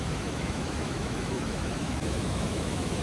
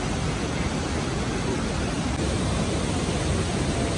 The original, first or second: second